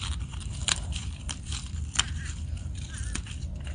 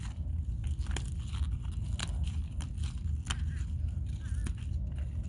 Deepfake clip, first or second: first